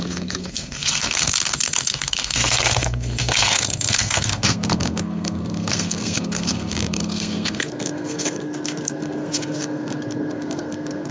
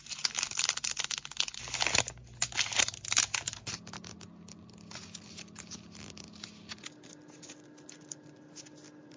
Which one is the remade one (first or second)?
first